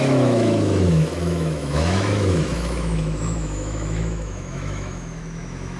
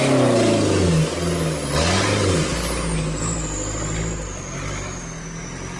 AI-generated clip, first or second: first